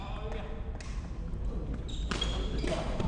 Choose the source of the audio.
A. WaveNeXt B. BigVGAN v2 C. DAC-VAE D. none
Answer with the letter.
D